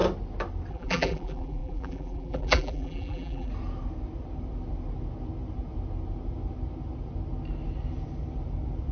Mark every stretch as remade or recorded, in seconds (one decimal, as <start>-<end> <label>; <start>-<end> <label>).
0.0-0.7 recorded; 0.7-3.5 remade; 3.5-8.9 recorded